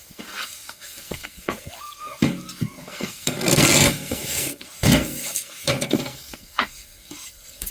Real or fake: fake